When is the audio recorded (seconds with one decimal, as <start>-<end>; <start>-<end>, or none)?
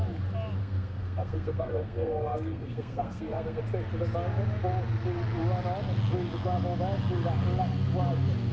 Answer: 0.0-0.6; 3.6-8.5